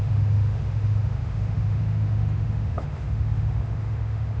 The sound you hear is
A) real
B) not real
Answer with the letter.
B